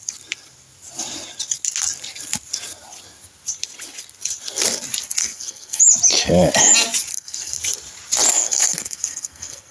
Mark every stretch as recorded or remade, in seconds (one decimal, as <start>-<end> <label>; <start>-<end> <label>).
0.0-5.2 recorded; 5.2-5.8 remade; 5.8-7.1 recorded; 7.1-7.6 remade; 7.6-8.3 recorded; 8.3-9.7 remade